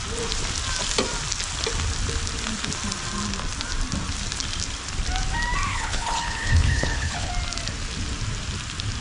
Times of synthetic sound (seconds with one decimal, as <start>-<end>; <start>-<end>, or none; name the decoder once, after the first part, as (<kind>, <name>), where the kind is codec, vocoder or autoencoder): 5.7-7.3 (codec, HILCodec)